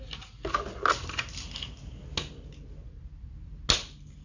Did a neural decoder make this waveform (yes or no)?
no